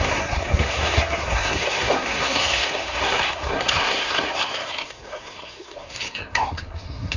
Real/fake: fake